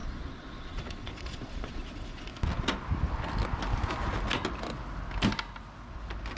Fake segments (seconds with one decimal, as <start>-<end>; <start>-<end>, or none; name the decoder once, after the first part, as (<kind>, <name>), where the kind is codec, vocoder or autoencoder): 0.0-2.3 (vocoder, Vocos)